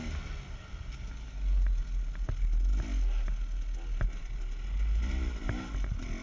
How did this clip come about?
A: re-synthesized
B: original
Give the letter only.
B